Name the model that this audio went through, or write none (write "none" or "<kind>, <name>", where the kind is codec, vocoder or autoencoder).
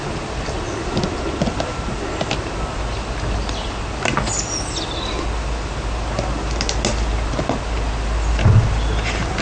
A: none